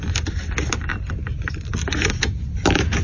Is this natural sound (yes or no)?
yes